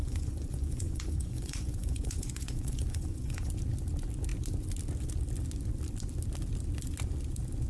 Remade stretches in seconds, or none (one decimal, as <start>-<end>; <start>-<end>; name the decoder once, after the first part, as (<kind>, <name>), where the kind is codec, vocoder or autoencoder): 0.0-3.5 (vocoder, Vocos)